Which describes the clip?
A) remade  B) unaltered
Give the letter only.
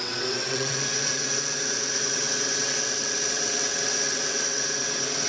A